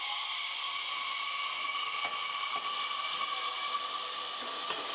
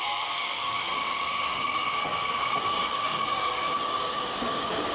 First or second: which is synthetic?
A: second